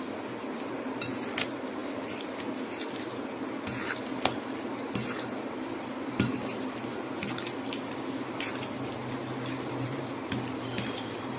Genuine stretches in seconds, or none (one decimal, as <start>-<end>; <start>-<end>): 0.0-11.4